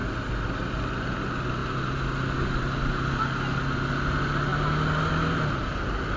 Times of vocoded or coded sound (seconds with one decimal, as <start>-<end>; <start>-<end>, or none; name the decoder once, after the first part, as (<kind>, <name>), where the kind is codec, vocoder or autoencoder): none